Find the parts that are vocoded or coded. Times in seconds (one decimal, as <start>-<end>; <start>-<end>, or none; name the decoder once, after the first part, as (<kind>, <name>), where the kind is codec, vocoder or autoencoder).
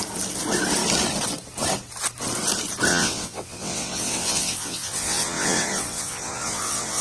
2.9-7.0 (vocoder, WaveNeXt)